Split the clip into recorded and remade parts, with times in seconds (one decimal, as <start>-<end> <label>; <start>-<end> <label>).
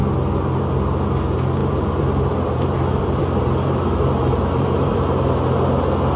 0.0-1.6 recorded; 1.6-5.3 remade; 5.3-6.2 recorded